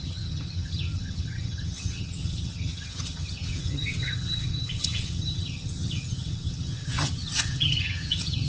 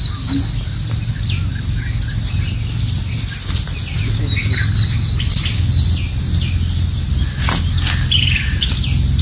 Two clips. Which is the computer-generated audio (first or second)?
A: first